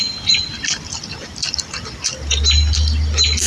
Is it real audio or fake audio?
real